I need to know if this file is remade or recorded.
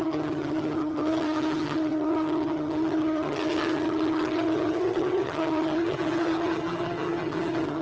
remade